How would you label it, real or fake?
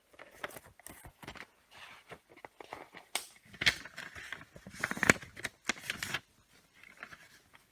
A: real